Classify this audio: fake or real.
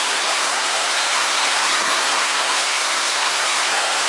fake